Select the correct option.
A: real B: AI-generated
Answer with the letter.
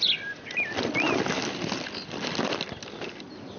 A